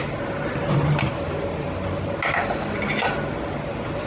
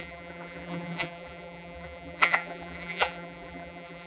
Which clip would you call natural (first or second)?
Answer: first